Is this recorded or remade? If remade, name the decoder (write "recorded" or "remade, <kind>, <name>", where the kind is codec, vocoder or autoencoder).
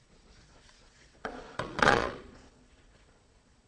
remade, vocoder, Vocos